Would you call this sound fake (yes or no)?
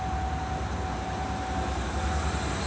no